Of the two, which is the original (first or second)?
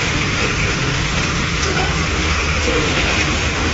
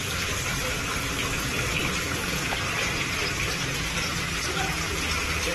second